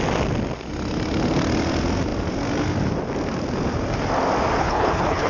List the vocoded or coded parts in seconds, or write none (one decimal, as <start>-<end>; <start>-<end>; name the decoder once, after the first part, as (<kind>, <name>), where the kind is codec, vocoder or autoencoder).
4.6-5.3 (codec, HILCodec)